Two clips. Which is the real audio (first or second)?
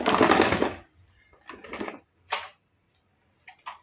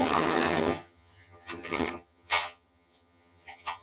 first